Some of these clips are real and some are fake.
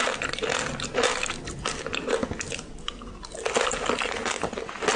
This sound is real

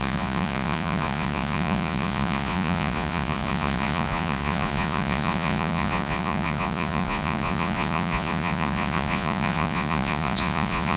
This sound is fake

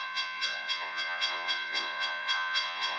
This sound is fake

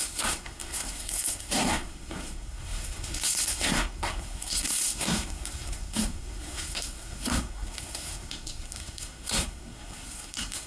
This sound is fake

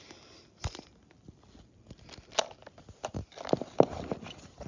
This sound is real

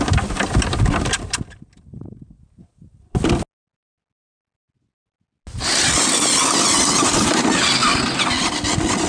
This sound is real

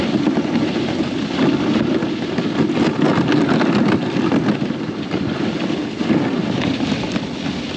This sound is real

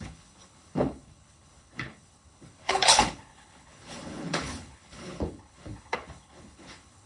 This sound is fake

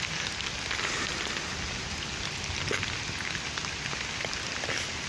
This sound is real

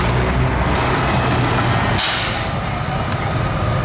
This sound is real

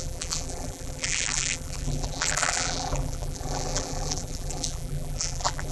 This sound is fake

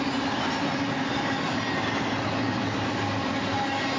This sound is real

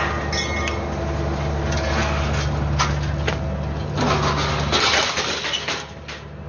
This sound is real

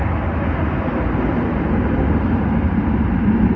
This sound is real